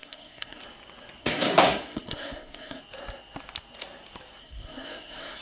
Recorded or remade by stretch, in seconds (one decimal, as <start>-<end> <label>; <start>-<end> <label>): 0.0-0.6 remade; 0.6-1.2 recorded; 1.2-2.8 remade; 2.8-4.4 recorded; 4.4-5.4 remade